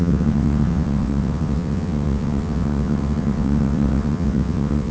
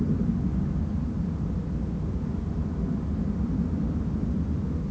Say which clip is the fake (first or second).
first